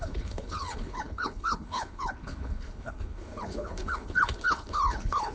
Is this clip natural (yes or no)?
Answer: no